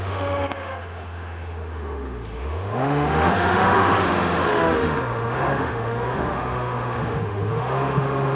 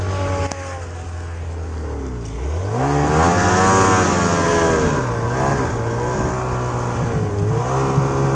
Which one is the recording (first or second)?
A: second